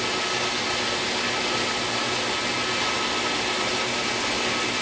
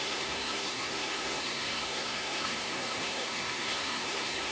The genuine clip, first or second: first